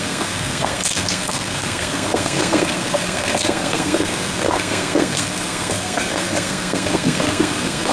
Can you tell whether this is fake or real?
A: fake